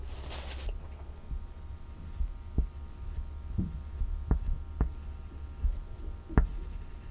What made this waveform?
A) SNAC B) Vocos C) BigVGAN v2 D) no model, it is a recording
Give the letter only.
D